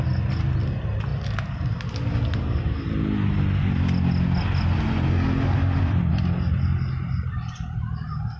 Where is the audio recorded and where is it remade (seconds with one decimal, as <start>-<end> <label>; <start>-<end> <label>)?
0.0-8.4 recorded